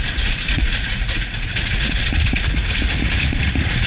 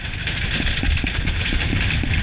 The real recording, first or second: second